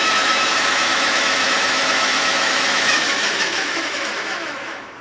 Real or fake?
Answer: fake